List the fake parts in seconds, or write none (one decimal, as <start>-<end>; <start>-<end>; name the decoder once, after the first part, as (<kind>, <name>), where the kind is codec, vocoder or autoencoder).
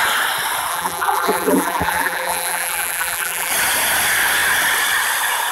0.7-3.5 (vocoder, BigVGAN v2)